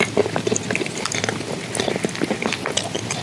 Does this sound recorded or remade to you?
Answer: recorded